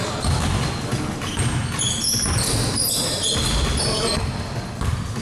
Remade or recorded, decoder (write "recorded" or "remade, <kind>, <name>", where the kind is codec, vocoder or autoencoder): recorded